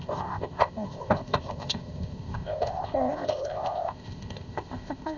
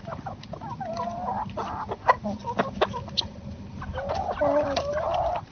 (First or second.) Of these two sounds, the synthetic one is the first